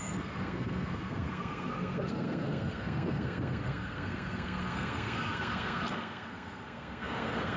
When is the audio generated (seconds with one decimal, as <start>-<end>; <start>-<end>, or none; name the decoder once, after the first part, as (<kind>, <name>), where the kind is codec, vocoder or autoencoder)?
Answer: 0.0-7.6 (codec, SNAC)